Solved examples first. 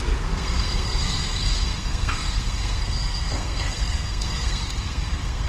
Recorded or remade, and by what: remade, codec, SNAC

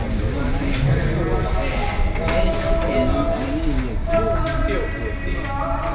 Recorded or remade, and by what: recorded